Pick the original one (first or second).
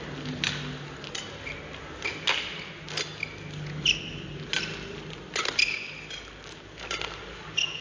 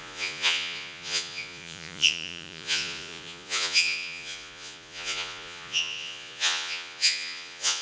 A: first